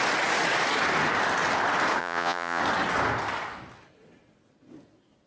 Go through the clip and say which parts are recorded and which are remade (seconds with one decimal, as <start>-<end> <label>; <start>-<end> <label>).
0.0-2.0 recorded; 2.0-2.6 remade; 2.6-5.3 recorded